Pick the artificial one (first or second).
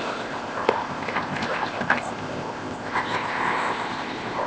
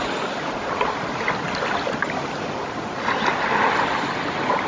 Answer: first